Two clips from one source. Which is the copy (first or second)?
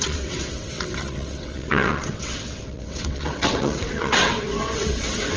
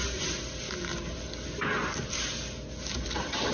first